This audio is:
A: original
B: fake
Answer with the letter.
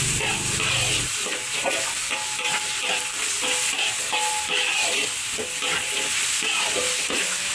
A